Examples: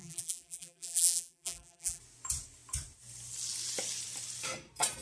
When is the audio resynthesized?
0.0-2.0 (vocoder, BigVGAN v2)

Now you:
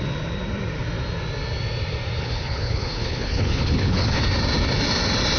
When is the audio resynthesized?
2.2-4.2 (codec, HILCodec)

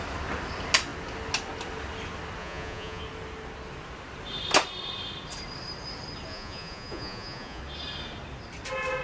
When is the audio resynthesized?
2.4-3.0 (vocoder, Vocos); 6.3-7.6